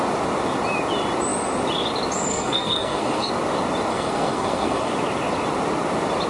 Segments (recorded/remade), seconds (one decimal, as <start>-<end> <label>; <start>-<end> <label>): 0.0-2.3 recorded; 2.3-3.3 remade; 3.3-3.9 recorded; 3.9-4.9 remade; 4.9-6.3 recorded